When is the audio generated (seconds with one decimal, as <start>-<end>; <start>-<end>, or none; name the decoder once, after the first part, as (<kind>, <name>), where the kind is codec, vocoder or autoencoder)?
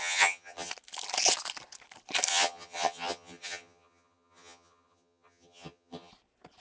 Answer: 0.0-0.7 (vocoder, HiFi-GAN); 2.3-6.1